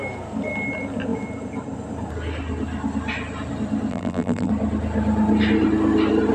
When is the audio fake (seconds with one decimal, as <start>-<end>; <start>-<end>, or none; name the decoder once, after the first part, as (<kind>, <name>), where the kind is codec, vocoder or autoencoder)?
3.9-4.5 (vocoder, BigVGAN v2)